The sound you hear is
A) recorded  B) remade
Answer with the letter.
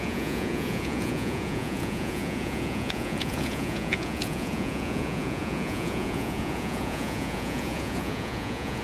B